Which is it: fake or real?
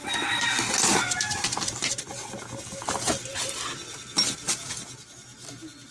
real